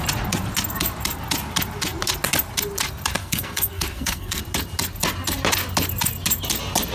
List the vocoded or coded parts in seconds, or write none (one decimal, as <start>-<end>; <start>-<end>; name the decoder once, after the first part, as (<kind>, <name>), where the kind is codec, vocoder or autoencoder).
3.2-4.4 (codec, SNAC)